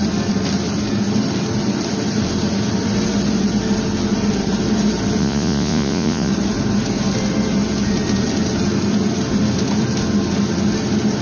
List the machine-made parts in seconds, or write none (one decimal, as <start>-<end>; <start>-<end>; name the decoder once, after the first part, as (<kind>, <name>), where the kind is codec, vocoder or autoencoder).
5.2-6.3 (vocoder, Vocos)